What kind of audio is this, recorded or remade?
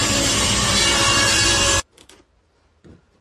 remade